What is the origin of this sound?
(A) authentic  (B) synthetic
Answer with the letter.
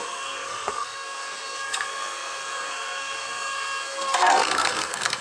B